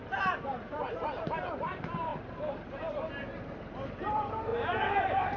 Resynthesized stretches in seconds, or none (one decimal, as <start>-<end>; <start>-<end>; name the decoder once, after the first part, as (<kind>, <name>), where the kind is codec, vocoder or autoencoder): 0.0-4.5 (vocoder, BigVGAN v2); 5.0-5.4